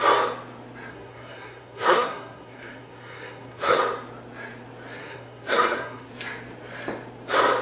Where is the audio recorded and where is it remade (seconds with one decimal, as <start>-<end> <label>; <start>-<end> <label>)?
0.0-0.9 recorded; 0.9-3.8 remade; 3.8-5.0 recorded; 5.0-6.1 remade; 6.1-7.6 recorded